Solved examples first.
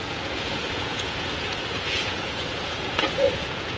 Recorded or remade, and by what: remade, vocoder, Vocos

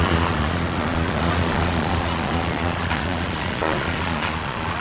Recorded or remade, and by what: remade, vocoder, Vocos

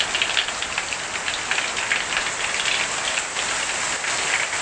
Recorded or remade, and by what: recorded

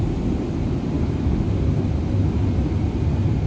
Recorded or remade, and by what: recorded